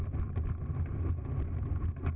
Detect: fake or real real